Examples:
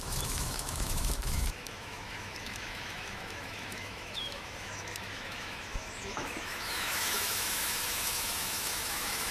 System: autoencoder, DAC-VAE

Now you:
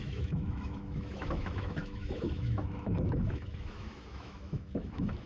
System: autoencoder, DAC-VAE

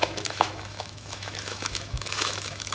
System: autoencoder, DAC-VAE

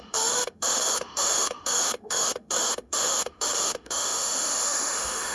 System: autoencoder, DAC-VAE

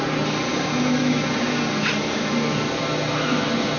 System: none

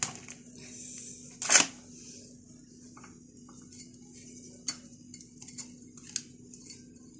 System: none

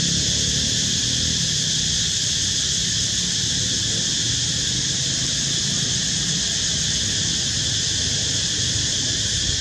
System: none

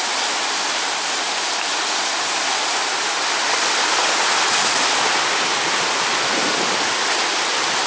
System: none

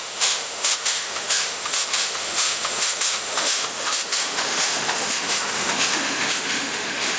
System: autoencoder, DAC-VAE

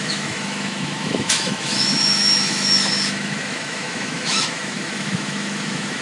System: autoencoder, DAC-VAE